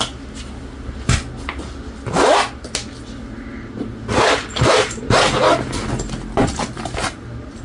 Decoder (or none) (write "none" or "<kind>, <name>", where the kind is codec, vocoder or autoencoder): none